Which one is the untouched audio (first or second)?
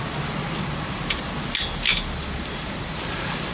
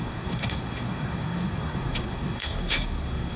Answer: first